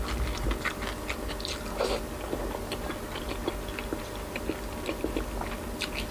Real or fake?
real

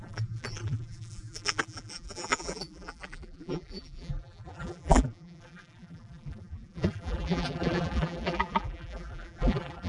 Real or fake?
fake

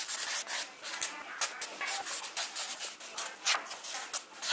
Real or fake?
real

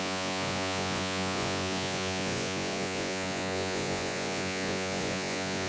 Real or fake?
fake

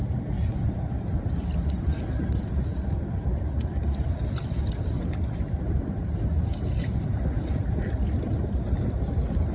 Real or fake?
real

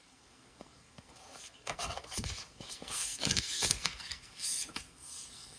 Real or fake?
fake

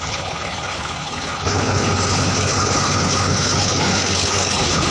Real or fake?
fake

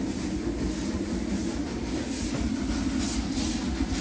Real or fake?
real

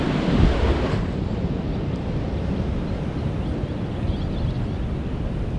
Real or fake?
real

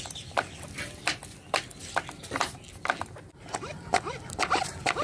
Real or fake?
fake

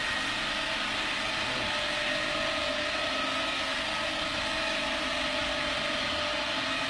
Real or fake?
real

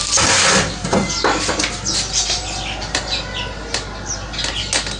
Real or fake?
real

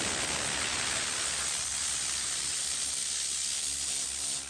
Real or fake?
real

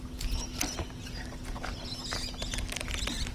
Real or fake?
real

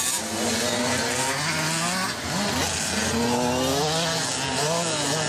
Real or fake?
real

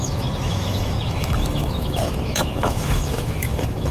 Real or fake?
fake